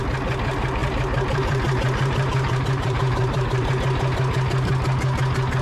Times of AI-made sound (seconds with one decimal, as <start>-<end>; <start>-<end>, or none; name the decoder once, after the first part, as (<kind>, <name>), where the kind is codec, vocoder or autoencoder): 0.8-3.7 (vocoder, BigVGAN v2)